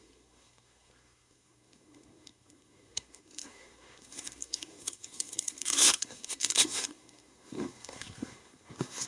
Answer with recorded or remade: remade